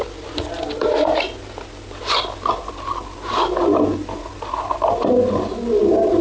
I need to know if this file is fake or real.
real